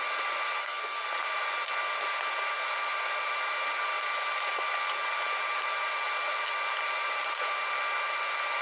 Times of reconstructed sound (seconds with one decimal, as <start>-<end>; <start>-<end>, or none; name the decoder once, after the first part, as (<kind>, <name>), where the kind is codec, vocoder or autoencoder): 0.6-1.1 (codec, SNAC)